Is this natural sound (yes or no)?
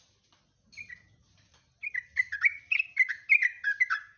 yes